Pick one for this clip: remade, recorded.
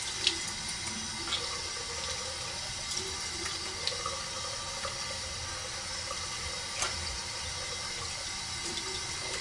recorded